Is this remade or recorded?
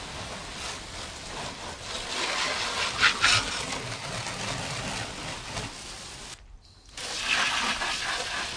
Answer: recorded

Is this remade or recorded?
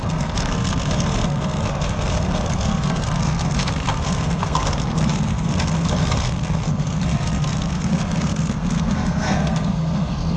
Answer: remade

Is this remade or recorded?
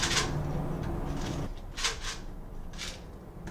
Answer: recorded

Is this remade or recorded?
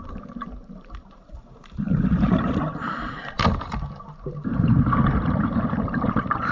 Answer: remade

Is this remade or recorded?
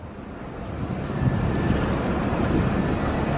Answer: recorded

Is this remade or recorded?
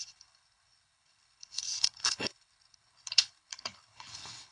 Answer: remade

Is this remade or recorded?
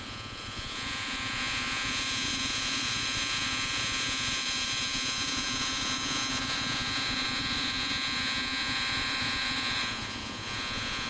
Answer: remade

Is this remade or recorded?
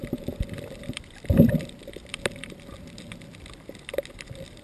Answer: remade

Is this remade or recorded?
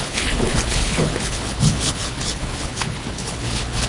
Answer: remade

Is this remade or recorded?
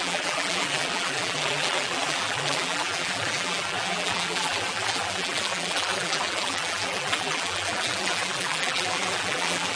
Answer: remade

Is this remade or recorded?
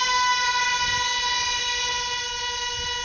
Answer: recorded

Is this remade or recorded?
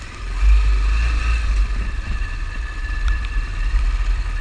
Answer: recorded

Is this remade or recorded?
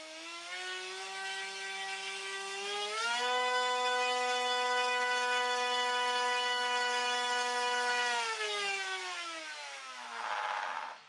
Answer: remade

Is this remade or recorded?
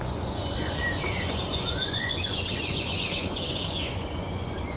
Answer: remade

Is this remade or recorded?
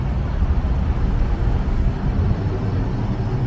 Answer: recorded